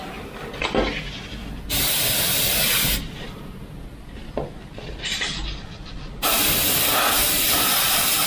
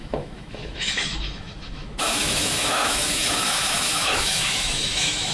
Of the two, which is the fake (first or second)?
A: second